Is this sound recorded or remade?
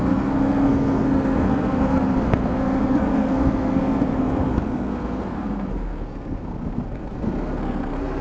remade